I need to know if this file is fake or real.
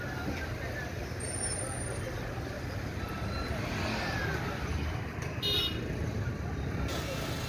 real